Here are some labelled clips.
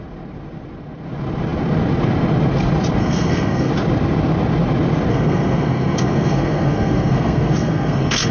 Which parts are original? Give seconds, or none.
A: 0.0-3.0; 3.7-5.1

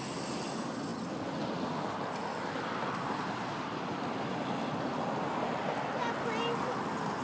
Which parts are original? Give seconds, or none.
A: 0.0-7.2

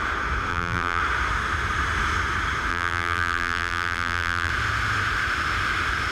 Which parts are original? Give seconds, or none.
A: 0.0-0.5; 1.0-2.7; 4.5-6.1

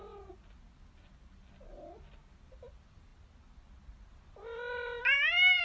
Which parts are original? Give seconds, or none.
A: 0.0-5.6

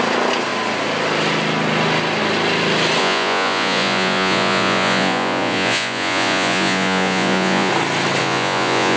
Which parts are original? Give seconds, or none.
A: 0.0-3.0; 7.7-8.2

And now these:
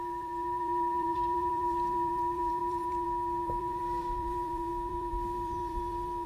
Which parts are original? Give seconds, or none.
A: none

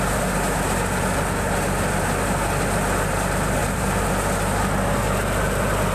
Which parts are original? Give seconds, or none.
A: 0.0-3.6; 4.1-5.9